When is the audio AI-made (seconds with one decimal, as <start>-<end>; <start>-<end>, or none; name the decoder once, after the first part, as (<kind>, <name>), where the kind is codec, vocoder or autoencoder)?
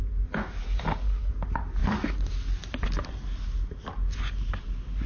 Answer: 0.6-1.3 (codec, HILCodec)